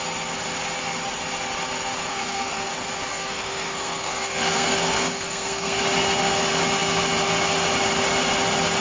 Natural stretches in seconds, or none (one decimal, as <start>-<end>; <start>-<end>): 0.0-2.1; 2.7-3.1; 5.8-8.8